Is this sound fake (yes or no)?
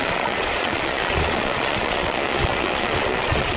yes